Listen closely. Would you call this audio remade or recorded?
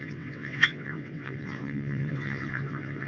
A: remade